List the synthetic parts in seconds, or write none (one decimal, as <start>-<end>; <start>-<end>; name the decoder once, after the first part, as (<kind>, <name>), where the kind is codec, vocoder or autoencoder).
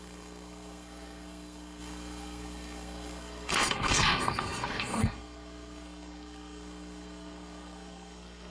0.0-8.5 (codec, SNAC)